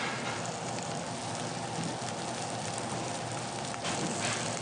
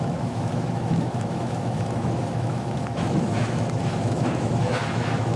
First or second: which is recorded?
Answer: first